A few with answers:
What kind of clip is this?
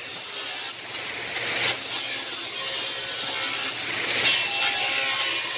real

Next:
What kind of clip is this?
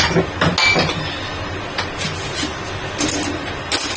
real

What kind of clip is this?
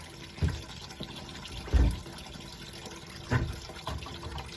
real